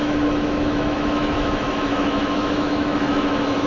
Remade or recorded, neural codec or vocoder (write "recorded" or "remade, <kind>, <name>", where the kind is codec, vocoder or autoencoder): remade, autoencoder, DAC-VAE